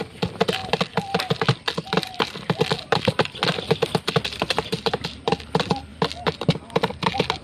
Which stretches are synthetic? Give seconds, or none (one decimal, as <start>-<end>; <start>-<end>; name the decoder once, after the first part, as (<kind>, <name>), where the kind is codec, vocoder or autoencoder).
none